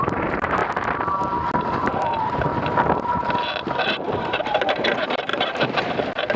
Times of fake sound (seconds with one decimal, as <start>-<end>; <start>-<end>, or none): 0.0-0.6; 1.9-2.5; 3.8-6.4